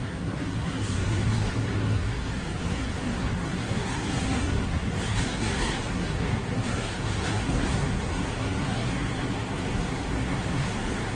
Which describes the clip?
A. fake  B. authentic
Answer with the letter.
A